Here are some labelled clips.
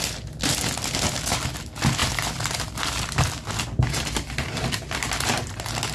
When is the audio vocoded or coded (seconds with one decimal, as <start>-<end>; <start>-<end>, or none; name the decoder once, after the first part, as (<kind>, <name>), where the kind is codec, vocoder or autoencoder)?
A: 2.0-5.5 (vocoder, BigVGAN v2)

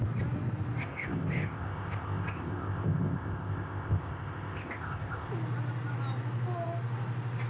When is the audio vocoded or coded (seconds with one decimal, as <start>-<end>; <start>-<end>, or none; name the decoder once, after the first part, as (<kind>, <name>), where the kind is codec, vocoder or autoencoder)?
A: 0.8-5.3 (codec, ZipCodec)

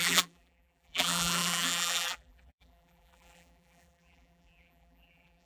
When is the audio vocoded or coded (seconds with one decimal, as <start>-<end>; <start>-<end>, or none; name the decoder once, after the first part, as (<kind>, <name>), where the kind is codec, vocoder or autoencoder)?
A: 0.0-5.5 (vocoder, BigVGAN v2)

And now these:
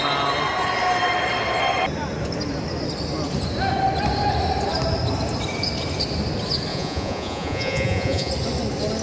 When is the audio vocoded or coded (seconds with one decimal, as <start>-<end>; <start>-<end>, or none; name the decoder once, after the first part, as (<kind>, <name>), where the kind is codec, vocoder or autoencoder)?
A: 6.7-8.3 (vocoder, Vocos)